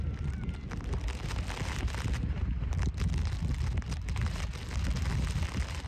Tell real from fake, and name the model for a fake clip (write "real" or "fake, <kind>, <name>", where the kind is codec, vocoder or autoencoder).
real